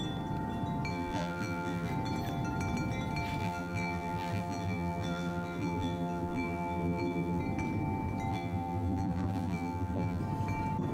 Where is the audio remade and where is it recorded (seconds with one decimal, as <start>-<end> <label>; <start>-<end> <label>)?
0.0-0.9 recorded; 0.9-1.9 remade; 1.9-3.4 recorded; 3.4-7.4 remade; 7.4-8.3 recorded; 8.3-10.2 remade; 10.2-10.9 recorded